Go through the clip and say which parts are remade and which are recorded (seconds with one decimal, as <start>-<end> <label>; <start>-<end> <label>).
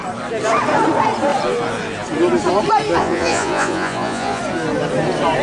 0.0-3.0 recorded; 3.0-4.4 remade; 4.4-5.4 recorded